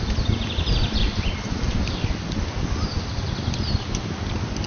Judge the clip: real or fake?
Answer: real